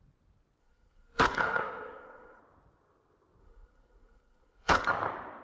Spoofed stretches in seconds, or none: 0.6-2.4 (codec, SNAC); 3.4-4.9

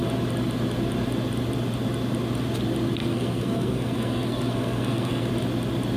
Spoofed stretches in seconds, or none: 3.0-5.3 (codec, SNAC)

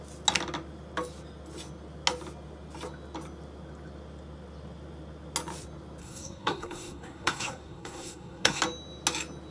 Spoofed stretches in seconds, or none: 6.0-8.6 (codec, SNAC)

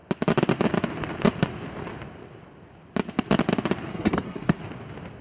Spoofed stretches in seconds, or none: 3.9-4.6 (codec, SNAC)